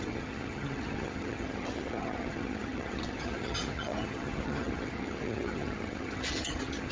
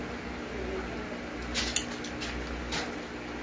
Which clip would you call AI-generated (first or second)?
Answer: first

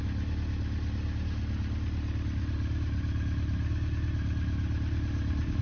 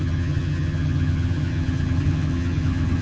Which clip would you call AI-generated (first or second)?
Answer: second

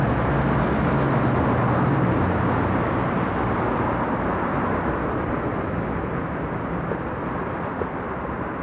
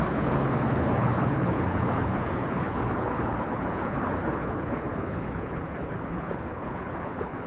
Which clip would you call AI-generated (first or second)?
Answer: second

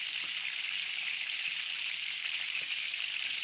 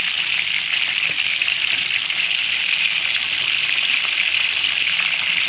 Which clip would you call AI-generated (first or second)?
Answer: first